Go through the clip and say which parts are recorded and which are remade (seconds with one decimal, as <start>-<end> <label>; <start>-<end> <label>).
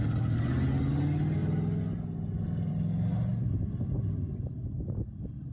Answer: 0.0-5.5 recorded